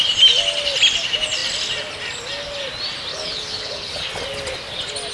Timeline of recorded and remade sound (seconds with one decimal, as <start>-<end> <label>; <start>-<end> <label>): 0.0-3.1 recorded; 3.1-4.0 remade; 4.0-5.1 recorded